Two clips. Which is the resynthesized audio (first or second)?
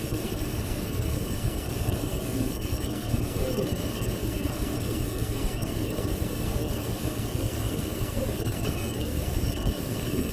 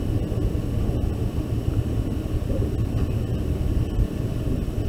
first